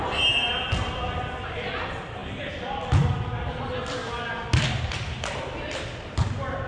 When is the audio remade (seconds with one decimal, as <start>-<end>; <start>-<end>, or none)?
none